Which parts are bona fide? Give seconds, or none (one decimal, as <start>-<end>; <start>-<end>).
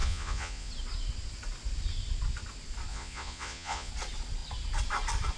0.7-2.9; 3.9-5.4